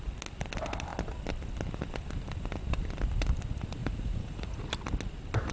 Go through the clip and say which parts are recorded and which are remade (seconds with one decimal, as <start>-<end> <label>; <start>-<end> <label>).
0.0-3.8 recorded; 3.8-4.7 remade; 4.7-5.5 recorded